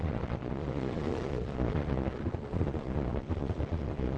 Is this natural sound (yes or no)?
no